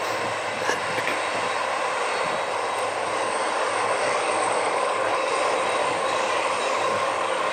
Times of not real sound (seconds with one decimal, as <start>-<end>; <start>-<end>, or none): 3.0-5.3; 5.8-7.5